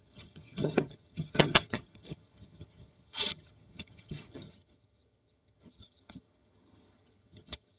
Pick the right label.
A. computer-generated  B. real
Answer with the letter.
A